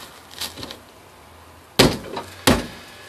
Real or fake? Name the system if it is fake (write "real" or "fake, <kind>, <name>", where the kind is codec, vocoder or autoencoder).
real